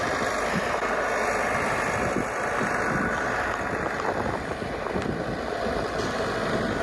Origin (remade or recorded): recorded